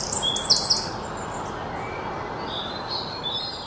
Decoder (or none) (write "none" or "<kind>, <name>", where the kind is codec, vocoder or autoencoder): none